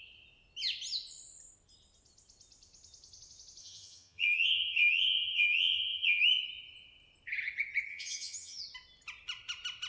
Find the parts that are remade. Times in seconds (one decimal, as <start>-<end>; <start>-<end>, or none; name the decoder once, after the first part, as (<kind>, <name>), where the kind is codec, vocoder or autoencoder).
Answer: 3.6-6.2 (vocoder, HiFi-GAN); 7.9-8.6